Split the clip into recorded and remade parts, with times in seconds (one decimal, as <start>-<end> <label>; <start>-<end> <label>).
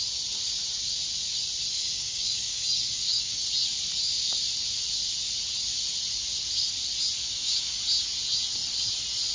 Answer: 0.0-1.7 recorded; 1.7-3.4 remade; 3.4-7.2 recorded; 7.2-7.8 remade; 7.8-9.3 recorded